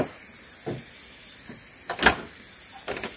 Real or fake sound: real